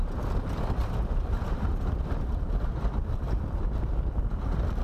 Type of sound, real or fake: fake